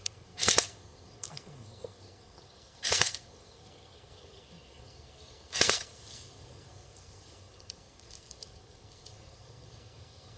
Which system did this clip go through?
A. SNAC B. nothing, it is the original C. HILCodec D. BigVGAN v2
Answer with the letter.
A